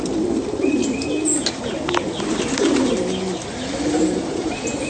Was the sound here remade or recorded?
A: recorded